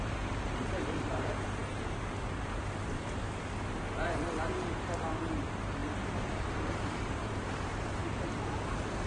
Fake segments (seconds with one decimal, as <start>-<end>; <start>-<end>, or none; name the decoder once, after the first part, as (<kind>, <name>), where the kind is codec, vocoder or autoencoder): 0.0-8.0 (vocoder, BigVGAN v2)